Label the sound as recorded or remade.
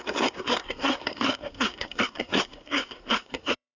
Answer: remade